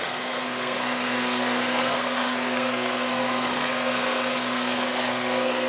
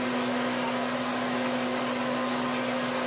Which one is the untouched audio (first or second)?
second